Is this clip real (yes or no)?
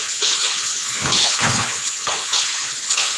no